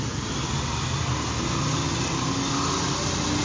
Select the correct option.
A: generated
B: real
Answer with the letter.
B